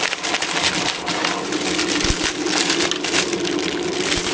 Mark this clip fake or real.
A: real